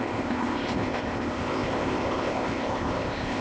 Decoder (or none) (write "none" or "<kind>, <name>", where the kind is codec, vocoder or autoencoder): codec, ZipCodec